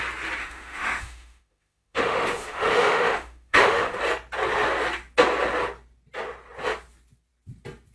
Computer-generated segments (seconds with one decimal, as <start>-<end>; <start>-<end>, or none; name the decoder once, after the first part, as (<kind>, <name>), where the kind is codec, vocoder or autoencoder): 0.4-4.0 (autoencoder, DAC-VAE)